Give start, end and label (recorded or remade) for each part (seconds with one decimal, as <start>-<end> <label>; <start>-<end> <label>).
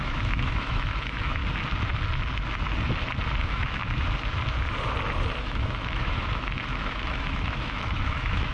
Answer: 0.0-1.4 remade; 1.4-3.4 recorded; 3.4-3.8 remade; 3.8-5.4 recorded; 5.4-8.5 remade